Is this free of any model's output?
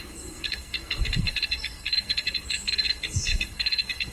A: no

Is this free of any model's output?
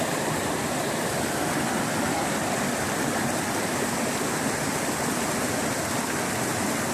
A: no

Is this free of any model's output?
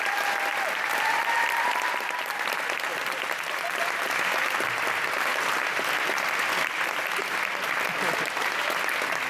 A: yes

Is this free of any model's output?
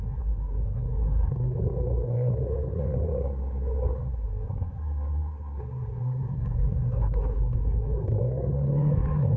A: no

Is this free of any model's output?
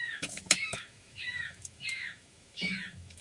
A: no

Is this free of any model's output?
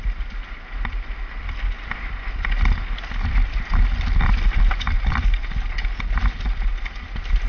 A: yes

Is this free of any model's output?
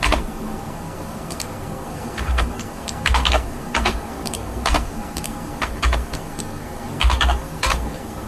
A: no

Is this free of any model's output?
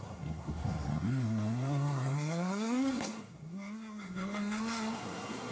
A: no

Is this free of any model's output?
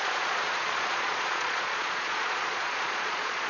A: no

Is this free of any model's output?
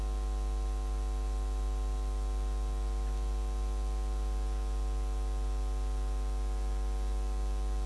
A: yes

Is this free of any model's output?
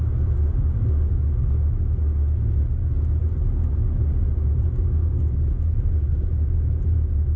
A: yes